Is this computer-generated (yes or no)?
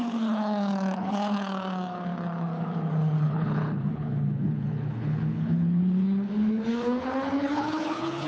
yes